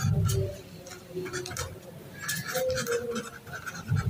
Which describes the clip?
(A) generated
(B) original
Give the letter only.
B